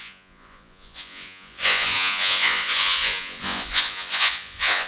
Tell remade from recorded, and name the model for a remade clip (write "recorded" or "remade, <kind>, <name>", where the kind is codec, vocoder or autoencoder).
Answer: remade, vocoder, Vocos